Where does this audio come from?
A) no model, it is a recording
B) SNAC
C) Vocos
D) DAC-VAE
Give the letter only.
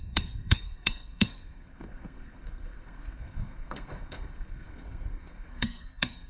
B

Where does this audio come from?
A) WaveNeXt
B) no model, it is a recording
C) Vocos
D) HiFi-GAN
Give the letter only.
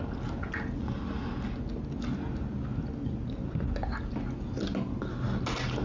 B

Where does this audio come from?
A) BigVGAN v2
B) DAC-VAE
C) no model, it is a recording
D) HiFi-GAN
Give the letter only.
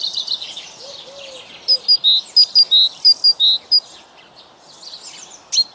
C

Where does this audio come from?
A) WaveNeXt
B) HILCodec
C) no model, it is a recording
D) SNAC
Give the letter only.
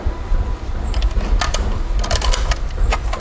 C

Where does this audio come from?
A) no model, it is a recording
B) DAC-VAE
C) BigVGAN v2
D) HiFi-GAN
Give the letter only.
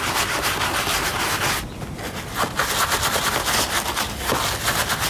A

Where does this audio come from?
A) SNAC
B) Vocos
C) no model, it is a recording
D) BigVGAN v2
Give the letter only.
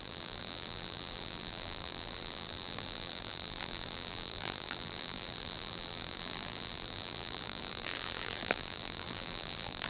D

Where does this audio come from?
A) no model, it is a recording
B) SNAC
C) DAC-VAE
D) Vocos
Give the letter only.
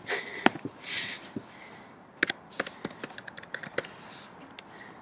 A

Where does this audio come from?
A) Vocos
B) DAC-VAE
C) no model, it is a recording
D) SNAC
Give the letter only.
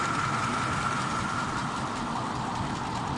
C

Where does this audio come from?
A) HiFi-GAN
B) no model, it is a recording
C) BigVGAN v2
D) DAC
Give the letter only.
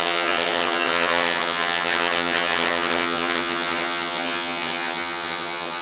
A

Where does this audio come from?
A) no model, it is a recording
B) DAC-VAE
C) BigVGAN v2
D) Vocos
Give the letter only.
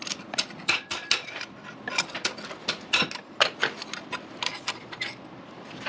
A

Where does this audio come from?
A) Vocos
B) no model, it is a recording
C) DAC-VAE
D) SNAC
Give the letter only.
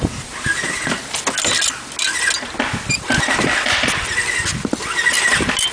B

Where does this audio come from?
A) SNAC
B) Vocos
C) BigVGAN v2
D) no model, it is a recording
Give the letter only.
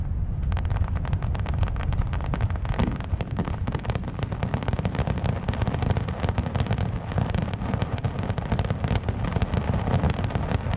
C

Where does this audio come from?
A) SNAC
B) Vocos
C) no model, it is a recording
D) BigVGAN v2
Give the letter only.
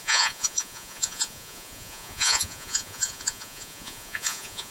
B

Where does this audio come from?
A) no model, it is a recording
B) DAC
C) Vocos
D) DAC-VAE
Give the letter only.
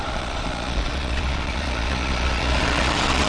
C